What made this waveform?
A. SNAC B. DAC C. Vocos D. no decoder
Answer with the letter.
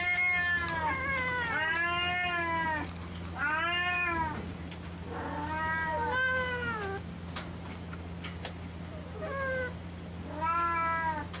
D